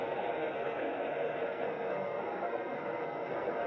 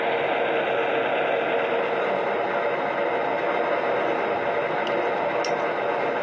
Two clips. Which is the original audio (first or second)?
second